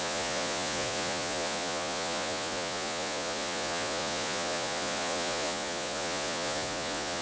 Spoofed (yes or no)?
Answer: yes